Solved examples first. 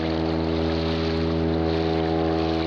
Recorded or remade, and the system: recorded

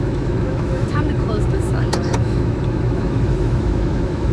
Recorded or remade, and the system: remade, autoencoder, DAC-VAE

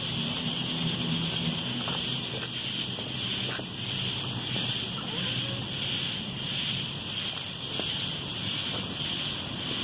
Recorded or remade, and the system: recorded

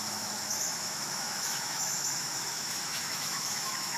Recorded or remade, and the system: remade, autoencoder, DAC-VAE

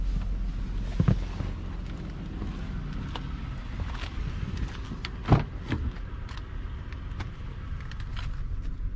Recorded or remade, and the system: recorded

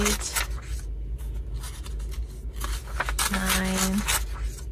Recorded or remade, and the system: recorded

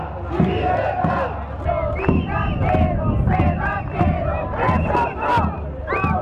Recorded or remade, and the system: recorded